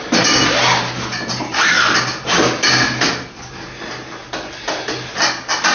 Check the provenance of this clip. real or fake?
real